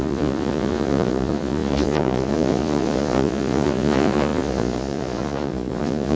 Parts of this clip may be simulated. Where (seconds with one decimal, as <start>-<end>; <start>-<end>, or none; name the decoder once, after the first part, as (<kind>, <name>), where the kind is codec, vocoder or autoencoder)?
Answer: 0.0-6.2 (vocoder, Vocos)